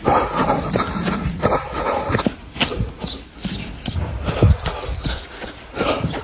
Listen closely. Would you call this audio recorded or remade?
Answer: recorded